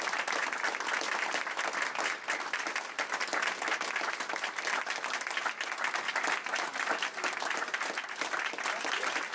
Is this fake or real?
real